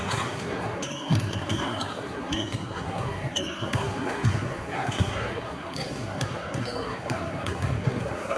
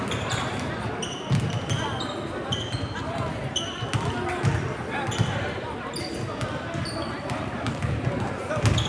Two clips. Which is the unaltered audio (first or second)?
second